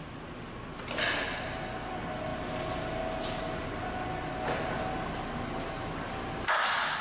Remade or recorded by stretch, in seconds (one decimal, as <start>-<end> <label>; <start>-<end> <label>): 0.0-7.0 recorded